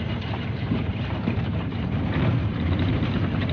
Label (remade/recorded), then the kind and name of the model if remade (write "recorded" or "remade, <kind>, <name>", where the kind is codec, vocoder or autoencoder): remade, vocoder, BigVGAN v2